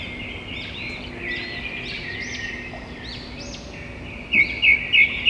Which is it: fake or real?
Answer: real